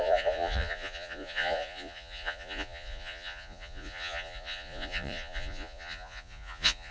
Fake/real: fake